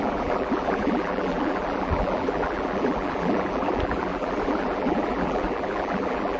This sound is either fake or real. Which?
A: fake